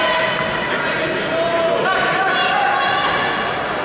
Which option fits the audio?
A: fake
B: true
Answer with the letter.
B